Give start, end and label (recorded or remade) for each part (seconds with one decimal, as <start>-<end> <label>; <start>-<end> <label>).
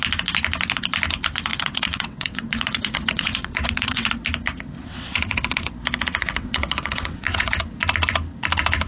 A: 0.0-1.5 recorded; 1.5-4.1 remade; 4.1-4.8 recorded; 4.8-5.7 remade; 5.7-6.2 recorded; 6.2-7.6 remade; 7.6-8.9 recorded